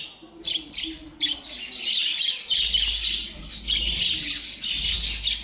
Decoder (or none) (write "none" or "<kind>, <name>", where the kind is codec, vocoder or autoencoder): none